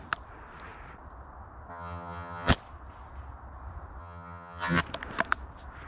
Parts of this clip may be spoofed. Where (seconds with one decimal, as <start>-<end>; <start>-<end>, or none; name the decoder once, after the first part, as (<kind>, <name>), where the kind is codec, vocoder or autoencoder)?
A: 1.7-2.5 (vocoder, HiFi-GAN); 4.0-4.8